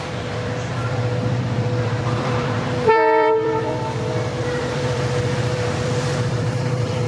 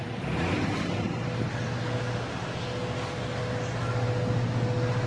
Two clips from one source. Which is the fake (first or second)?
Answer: first